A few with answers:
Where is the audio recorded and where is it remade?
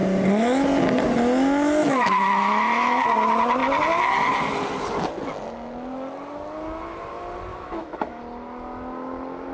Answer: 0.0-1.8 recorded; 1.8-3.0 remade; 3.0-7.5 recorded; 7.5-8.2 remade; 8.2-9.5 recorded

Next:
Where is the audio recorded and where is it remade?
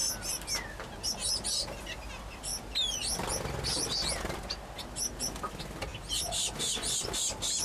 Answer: 0.0-7.6 recorded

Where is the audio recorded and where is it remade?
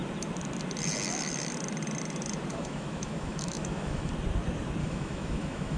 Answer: 0.0-2.5 recorded; 2.5-4.1 remade; 4.1-4.8 recorded; 4.8-5.8 remade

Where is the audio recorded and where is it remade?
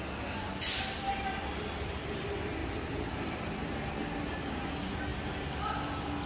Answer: 0.0-6.3 recorded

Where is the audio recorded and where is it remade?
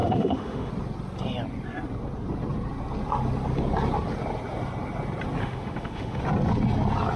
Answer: 0.0-0.7 remade; 0.7-5.4 recorded; 5.4-6.2 remade; 6.2-7.2 recorded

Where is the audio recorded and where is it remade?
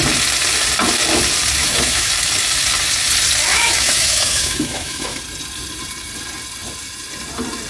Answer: 0.0-1.6 recorded; 1.6-2.1 remade; 2.1-3.5 recorded; 3.5-5.2 remade; 5.2-7.7 recorded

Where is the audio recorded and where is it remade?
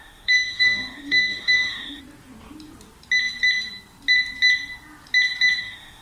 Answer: 0.0-2.0 remade; 2.0-5.6 recorded; 5.6-6.0 remade